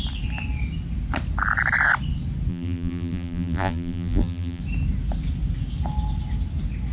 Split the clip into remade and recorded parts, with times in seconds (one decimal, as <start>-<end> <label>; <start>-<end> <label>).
0.0-2.5 recorded; 2.5-4.6 remade; 4.6-6.9 recorded